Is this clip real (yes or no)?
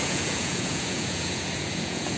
no